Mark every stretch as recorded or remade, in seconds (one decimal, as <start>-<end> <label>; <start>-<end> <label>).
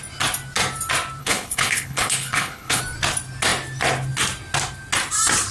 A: 0.0-1.2 recorded; 1.2-2.8 remade; 2.8-5.5 recorded